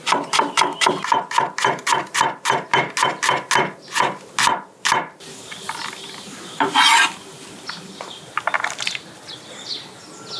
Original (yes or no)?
yes